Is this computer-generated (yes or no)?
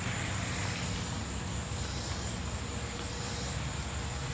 no